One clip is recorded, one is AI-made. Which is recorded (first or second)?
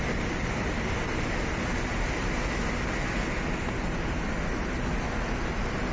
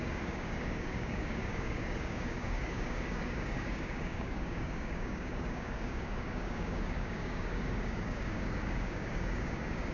first